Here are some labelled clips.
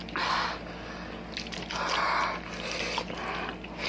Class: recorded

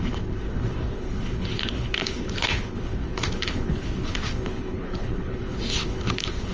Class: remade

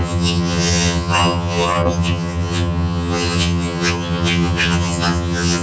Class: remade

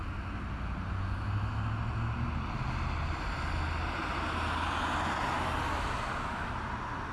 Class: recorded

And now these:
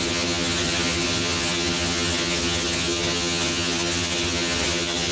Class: remade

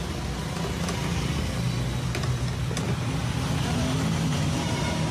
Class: recorded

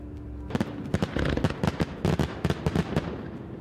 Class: recorded